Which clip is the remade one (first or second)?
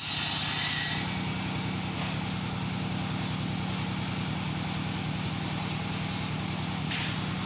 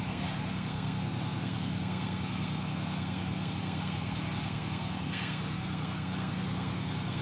second